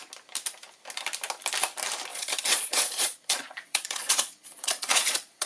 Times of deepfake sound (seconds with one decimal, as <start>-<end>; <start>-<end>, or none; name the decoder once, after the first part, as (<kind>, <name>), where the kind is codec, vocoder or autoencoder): 2.1-5.5 (vocoder, Vocos)